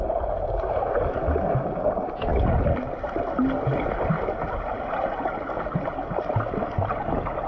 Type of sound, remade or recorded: recorded